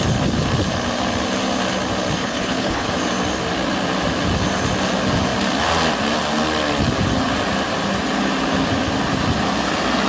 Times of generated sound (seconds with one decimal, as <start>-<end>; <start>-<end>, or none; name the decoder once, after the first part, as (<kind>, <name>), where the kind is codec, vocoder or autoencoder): 2.2-2.9 (codec, HILCodec)